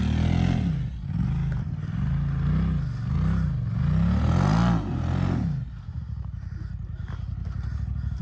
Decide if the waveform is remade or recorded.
recorded